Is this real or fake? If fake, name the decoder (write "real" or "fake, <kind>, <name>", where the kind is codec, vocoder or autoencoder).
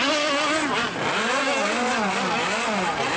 real